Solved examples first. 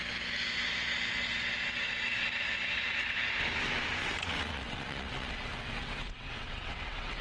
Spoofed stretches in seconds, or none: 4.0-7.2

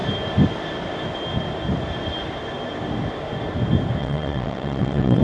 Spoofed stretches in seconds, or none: 4.0-5.2

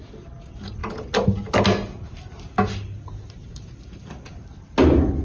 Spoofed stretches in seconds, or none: none

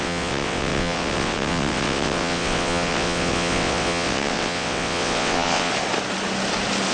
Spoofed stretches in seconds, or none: 0.0-5.7

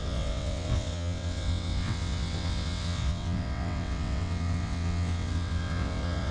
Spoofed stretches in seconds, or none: 0.0-6.3

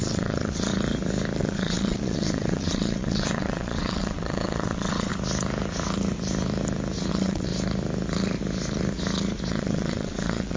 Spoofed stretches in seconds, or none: 0.0-0.7; 1.4-5.1; 7.1-7.5; 9.5-10.6

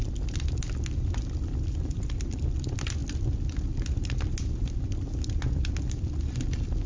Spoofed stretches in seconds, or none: none

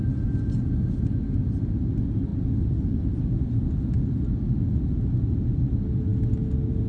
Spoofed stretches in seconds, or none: none